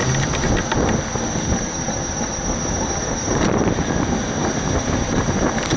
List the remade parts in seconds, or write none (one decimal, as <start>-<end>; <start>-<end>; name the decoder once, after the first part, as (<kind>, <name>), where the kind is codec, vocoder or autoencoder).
none